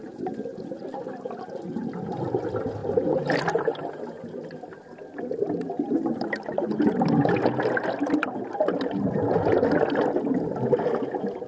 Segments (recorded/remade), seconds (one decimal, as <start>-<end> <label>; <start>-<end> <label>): 0.0-11.5 recorded